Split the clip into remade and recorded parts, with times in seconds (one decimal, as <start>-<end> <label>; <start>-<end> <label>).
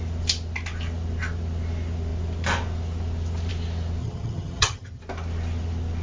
0.0-4.0 recorded; 4.0-5.0 remade; 5.0-6.0 recorded